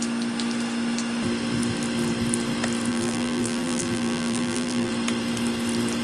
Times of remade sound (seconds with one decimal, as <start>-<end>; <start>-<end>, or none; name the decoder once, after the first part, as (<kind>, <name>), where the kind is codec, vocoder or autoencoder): 2.9-4.9 (vocoder, BigVGAN v2)